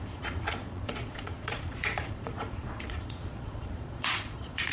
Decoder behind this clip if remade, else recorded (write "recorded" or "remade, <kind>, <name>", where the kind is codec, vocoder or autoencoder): remade, vocoder, Vocos